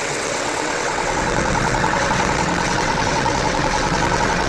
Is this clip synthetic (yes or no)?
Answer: yes